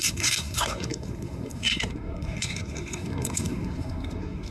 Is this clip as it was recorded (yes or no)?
no